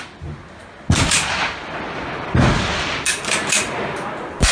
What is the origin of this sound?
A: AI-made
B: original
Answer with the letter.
B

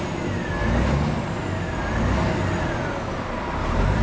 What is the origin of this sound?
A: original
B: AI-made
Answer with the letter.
A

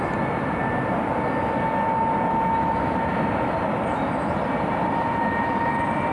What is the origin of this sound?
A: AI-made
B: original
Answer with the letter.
B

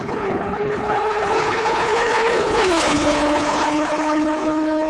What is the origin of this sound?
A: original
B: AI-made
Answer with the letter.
B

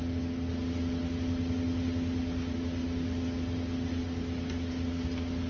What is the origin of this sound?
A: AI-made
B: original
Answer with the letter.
B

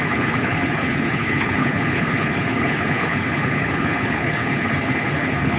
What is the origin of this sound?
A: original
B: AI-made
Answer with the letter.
B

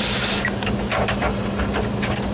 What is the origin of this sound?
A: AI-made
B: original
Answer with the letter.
B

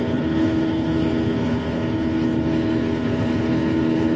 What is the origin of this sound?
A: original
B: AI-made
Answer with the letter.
B